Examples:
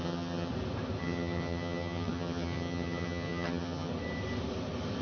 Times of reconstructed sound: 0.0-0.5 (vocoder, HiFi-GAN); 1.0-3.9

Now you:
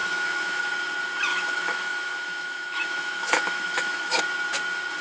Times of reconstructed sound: 0.0-0.7 (autoencoder, DAC-VAE); 1.3-4.2

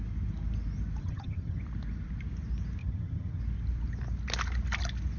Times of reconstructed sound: 1.0-1.6 (vocoder, HiFi-GAN); 2.8-3.4

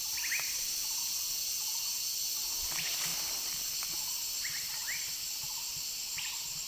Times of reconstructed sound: none

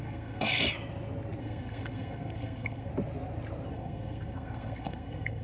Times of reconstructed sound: 0.0-0.6 (codec, SNAC); 1.4-2.9; 3.7-5.4

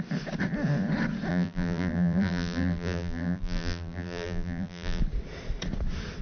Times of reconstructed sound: 1.3-5.0 (vocoder, BigVGAN v2)